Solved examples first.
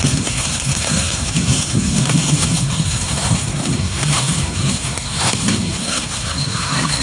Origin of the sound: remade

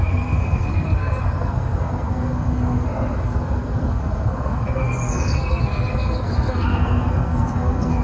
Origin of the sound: remade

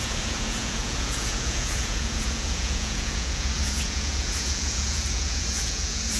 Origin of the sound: remade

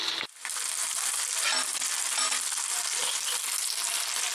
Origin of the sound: recorded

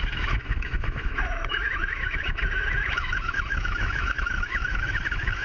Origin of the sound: remade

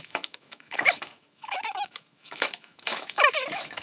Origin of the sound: remade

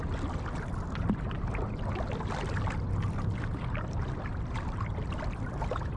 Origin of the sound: recorded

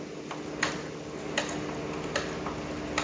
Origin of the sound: recorded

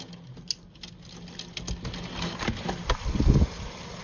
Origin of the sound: recorded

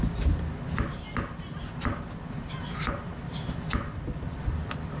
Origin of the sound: recorded